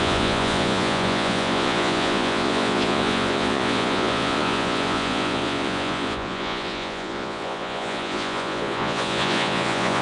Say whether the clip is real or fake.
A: fake